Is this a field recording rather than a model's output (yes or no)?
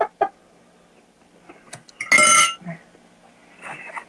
yes